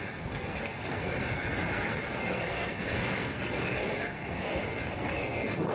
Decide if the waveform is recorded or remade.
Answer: remade